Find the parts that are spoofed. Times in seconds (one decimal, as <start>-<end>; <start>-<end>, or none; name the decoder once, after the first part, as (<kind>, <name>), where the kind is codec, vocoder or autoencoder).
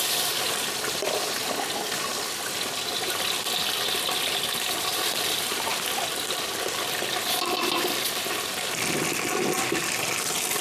none